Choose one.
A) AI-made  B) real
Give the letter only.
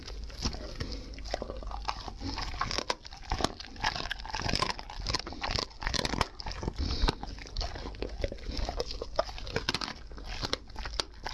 B